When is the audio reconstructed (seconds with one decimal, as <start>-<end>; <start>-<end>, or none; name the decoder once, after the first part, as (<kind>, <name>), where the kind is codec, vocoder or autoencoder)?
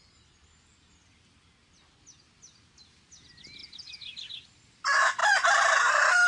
none